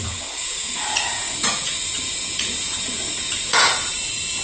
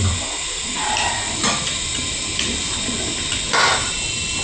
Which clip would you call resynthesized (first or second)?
first